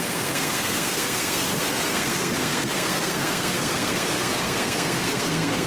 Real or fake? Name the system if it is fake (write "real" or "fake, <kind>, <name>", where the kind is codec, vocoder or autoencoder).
fake, codec, SNAC